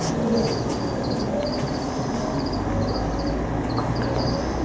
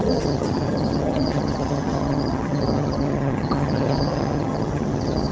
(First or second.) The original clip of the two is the first